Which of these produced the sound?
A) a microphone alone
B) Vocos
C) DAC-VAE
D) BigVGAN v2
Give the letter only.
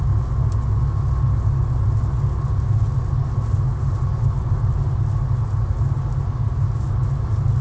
A